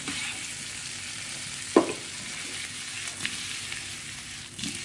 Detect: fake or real real